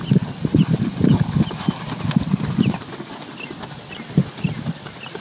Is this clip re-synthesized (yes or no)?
no